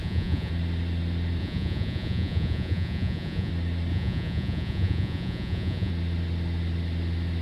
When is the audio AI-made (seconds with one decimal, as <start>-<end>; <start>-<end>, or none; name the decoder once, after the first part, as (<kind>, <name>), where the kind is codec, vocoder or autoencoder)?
0.0-0.5 (vocoder, Vocos); 1.4-3.5; 3.9-5.9